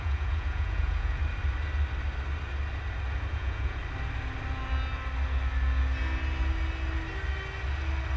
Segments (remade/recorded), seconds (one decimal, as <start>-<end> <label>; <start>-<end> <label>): 0.0-1.2 remade; 1.2-3.3 recorded; 3.3-3.8 remade; 3.8-8.2 recorded

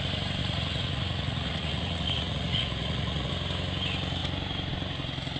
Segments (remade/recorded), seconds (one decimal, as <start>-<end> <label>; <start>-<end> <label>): 0.0-0.4 recorded; 0.4-3.3 remade; 3.3-5.4 recorded

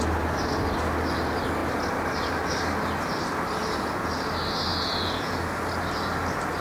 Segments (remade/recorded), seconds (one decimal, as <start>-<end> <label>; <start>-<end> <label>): 0.0-3.6 recorded; 3.6-4.1 remade; 4.1-4.7 recorded; 4.7-5.4 remade; 5.4-6.6 recorded

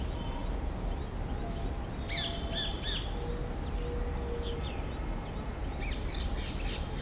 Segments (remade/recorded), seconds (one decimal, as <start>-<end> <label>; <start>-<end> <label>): 0.0-7.0 recorded

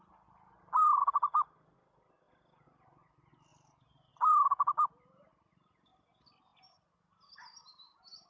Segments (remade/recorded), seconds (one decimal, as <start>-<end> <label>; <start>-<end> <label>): 0.0-8.3 recorded

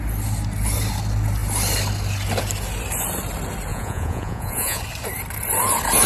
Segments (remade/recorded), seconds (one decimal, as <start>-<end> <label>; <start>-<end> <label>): 0.0-3.7 recorded; 3.7-4.8 remade; 4.8-6.1 recorded

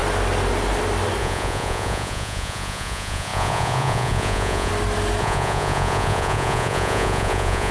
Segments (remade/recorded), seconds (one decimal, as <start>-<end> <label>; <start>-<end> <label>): 0.0-1.2 recorded; 1.2-4.7 remade; 4.7-5.2 recorded; 5.2-7.7 remade

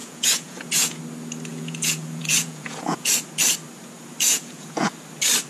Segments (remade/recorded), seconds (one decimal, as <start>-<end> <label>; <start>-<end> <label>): 0.0-1.0 remade; 1.0-1.5 recorded; 1.5-3.1 remade; 3.1-4.3 recorded; 4.3-4.9 remade; 4.9-5.5 recorded